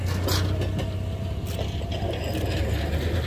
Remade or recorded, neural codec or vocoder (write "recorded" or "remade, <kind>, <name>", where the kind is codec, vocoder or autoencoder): recorded